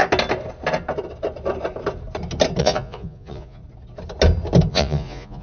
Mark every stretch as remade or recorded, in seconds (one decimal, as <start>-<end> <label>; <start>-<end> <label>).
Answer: 0.0-2.6 recorded; 2.6-3.6 remade; 3.6-4.7 recorded; 4.7-5.4 remade